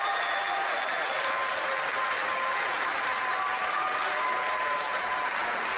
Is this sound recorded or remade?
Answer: recorded